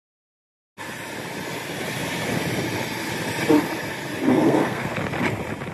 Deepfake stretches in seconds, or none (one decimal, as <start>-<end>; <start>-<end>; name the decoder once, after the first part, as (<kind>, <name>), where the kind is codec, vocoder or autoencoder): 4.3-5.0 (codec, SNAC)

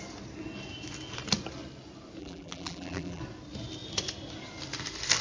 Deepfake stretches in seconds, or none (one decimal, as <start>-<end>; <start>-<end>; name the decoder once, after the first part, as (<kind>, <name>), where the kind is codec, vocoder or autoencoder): 2.2-3.2 (vocoder, BigVGAN v2)

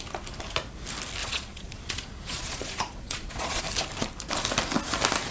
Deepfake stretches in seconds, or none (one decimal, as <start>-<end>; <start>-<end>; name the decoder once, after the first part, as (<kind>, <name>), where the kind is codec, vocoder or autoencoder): 1.2-3.6 (vocoder, Vocos)